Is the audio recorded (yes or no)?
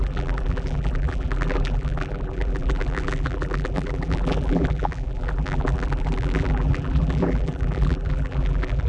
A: no